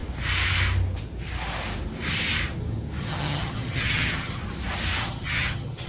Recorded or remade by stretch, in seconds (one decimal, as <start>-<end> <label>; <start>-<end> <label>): 0.0-3.0 recorded; 3.0-4.4 remade; 4.4-5.0 recorded; 5.0-5.9 remade